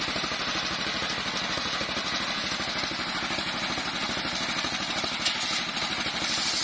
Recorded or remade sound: recorded